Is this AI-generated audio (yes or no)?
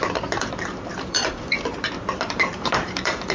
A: yes